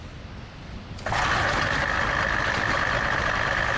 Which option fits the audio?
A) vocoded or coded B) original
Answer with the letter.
B